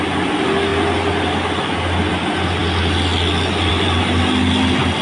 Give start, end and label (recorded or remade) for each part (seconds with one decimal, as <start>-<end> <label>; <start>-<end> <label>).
0.0-5.0 recorded